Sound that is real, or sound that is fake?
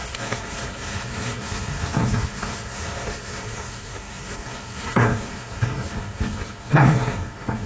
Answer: fake